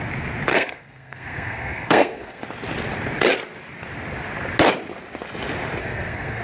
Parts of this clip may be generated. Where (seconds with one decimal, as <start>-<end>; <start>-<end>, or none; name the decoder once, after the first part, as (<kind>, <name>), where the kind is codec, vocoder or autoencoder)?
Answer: 0.5-2.4 (codec, SNAC); 5.8-6.4